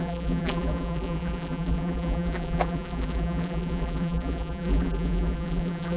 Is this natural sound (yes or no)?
no